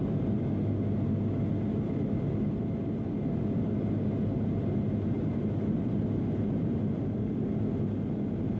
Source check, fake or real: real